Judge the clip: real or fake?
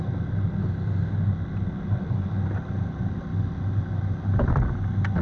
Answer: real